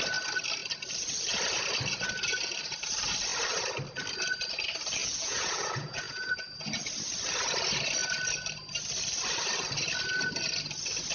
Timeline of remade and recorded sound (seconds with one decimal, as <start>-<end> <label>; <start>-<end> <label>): 0.0-5.0 recorded; 5.0-6.7 remade; 6.7-11.1 recorded